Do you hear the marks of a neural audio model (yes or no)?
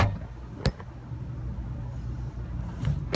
no